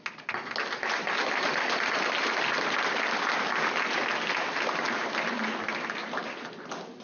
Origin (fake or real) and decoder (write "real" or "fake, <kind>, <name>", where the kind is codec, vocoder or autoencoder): real